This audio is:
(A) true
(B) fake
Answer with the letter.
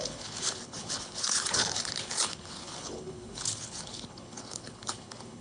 B